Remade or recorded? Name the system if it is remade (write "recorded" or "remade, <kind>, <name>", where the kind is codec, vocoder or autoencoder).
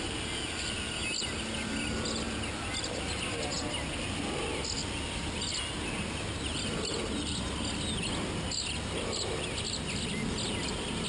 recorded